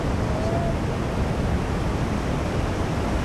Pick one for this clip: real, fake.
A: real